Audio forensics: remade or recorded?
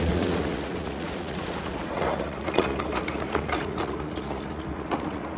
remade